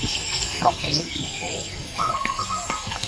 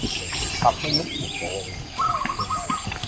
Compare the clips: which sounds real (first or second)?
second